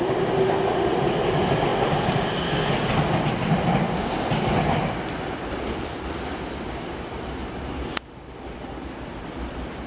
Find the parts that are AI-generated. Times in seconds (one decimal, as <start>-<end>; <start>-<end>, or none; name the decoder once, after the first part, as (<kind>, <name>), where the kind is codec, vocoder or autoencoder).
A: none